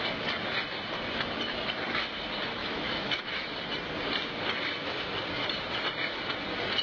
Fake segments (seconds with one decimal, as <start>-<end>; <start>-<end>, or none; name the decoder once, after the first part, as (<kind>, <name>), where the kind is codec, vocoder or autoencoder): 2.6-3.2 (autoencoder, DAC-VAE)